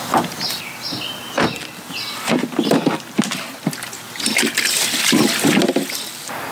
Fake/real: real